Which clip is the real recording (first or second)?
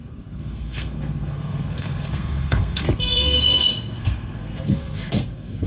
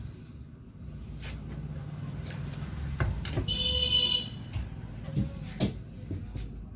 second